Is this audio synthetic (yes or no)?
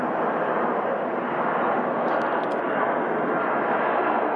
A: no